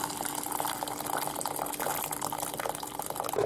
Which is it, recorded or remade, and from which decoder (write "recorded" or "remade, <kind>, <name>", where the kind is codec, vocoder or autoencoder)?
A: recorded